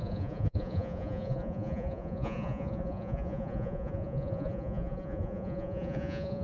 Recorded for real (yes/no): no